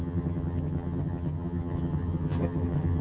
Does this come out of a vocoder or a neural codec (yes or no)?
yes